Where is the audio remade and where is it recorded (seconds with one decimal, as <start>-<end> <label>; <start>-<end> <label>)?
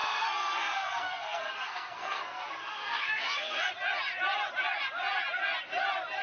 0.0-3.7 remade; 3.7-6.2 recorded